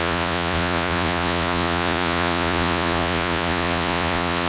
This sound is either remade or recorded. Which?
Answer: remade